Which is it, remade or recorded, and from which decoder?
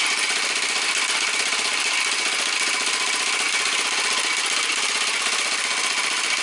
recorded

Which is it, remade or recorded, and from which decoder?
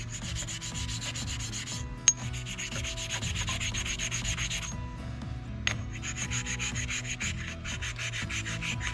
recorded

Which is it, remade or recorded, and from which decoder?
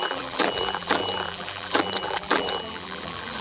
remade, vocoder, BigVGAN v2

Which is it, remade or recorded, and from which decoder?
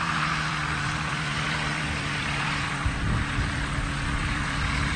remade, vocoder, BigVGAN v2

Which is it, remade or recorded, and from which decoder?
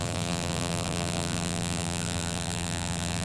remade, vocoder, BigVGAN v2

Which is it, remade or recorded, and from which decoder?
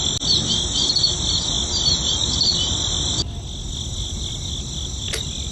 recorded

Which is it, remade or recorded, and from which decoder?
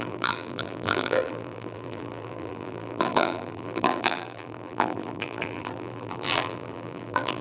remade, vocoder, BigVGAN v2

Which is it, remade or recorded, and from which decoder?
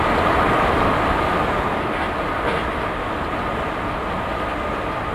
recorded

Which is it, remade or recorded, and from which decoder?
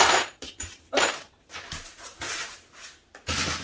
remade, vocoder, BigVGAN v2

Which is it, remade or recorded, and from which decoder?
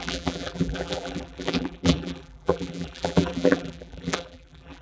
remade, vocoder, BigVGAN v2